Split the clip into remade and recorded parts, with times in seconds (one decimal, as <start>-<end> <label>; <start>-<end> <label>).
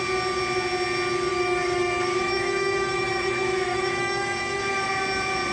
0.0-1.3 recorded; 1.3-4.6 remade; 4.6-5.5 recorded